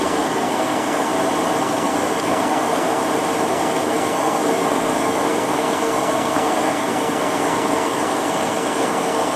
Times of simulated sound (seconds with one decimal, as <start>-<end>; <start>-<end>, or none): 0.0-1.1; 1.6-3.0; 3.5-9.4